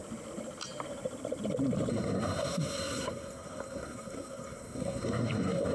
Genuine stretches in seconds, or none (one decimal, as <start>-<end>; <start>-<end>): 0.0-1.9